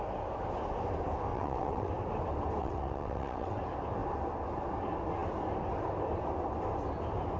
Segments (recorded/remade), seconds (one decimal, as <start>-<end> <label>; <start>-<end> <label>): 0.0-1.3 recorded; 1.3-1.9 remade; 1.9-2.6 recorded; 2.6-3.6 remade; 3.6-7.4 recorded